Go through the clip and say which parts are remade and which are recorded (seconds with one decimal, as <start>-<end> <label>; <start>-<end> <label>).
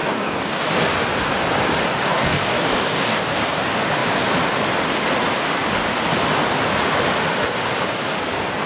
0.0-0.6 remade; 0.6-2.0 recorded; 2.0-3.2 remade; 3.2-8.7 recorded